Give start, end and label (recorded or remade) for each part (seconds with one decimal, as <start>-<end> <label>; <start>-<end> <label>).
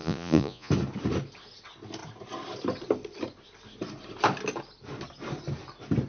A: 0.0-0.7 remade; 0.7-6.1 recorded